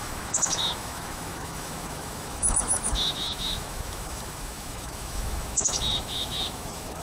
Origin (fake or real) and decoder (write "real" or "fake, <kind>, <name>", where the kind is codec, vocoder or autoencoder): fake, autoencoder, DAC-VAE